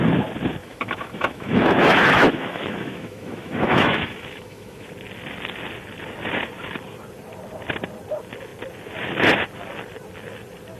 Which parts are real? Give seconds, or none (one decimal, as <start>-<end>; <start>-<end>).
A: 0.0-0.6; 4.9-10.8